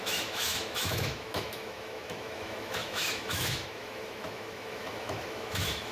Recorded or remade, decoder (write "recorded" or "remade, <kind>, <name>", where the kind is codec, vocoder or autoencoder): remade, autoencoder, DAC-VAE